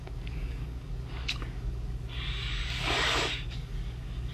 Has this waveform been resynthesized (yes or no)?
yes